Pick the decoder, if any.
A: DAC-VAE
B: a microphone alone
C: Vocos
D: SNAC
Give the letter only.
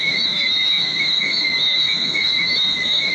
A